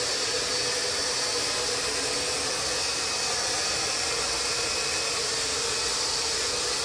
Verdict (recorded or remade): recorded